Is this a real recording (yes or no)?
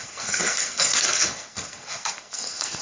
no